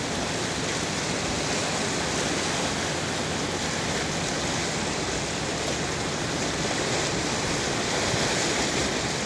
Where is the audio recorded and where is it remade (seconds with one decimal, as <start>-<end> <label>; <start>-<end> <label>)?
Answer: 0.0-9.3 recorded